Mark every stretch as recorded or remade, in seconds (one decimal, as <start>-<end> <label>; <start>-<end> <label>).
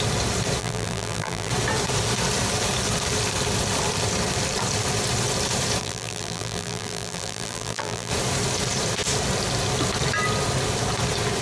0.0-0.6 recorded; 0.6-1.5 remade; 1.5-5.8 recorded; 5.8-8.1 remade; 8.1-11.4 recorded